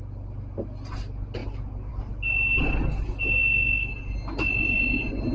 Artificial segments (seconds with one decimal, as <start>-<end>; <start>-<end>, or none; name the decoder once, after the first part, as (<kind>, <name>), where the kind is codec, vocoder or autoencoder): none